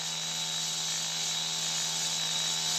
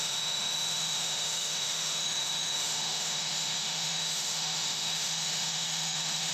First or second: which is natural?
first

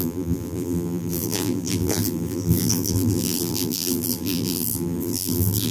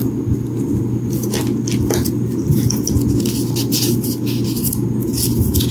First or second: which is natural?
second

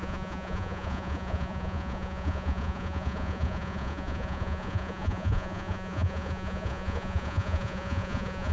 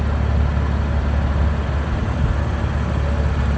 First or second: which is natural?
second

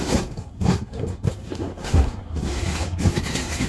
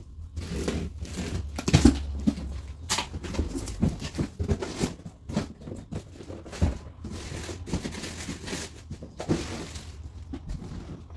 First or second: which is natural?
second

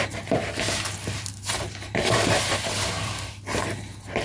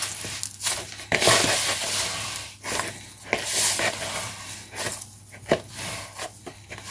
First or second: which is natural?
second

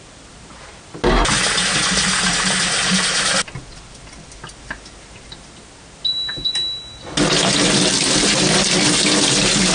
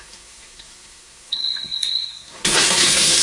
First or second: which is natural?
first